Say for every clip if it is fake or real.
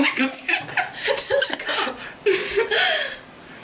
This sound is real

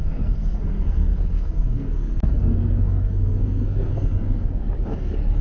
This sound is fake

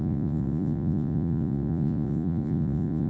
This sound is fake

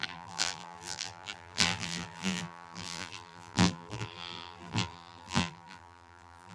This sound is fake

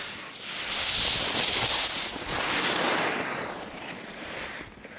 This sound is real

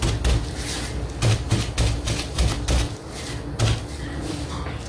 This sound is real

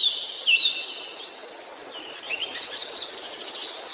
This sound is real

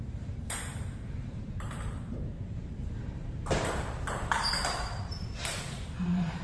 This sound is fake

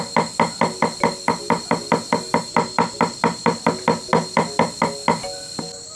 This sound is real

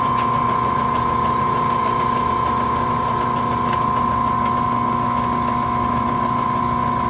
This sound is real